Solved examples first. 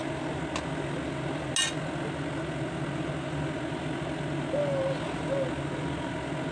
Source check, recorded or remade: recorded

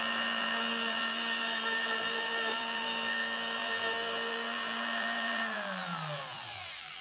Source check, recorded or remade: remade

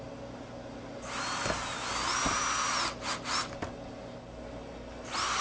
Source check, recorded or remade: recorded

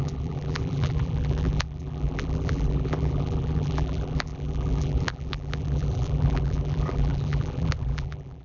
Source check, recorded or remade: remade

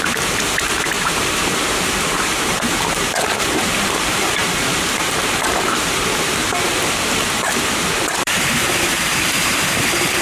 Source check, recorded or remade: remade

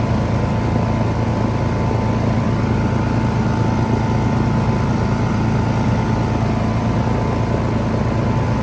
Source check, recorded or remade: recorded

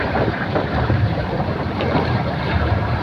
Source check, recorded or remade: remade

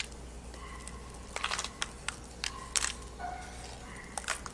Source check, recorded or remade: recorded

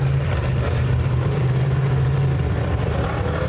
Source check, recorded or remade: remade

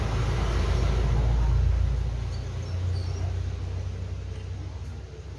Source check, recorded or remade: recorded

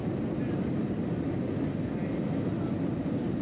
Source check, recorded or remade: recorded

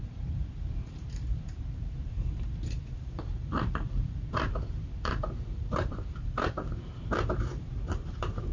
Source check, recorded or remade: remade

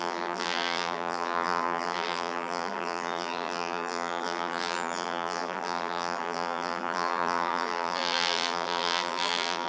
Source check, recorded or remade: remade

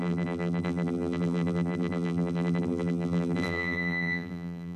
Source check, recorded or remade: remade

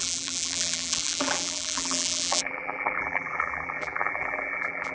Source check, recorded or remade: remade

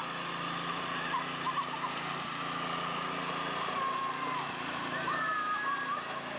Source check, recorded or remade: recorded